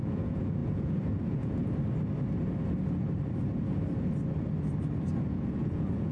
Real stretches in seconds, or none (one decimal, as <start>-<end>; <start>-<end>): 1.6-5.3